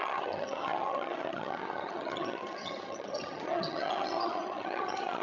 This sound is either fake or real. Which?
fake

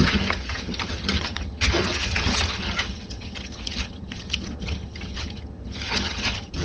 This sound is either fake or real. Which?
fake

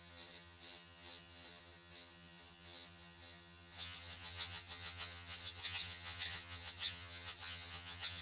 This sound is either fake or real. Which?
fake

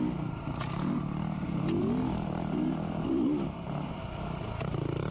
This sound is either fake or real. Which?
real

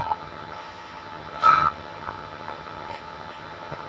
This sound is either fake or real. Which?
fake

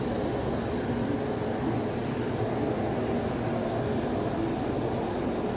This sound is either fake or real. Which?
real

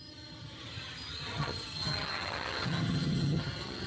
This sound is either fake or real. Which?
fake